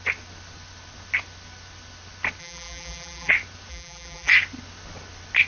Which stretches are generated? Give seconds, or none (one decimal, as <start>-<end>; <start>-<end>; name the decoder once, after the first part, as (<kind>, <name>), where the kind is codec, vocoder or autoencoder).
2.4-3.3 (vocoder, BigVGAN v2); 3.7-4.3